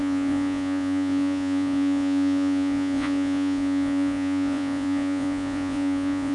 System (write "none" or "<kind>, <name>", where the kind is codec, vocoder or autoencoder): vocoder, Vocos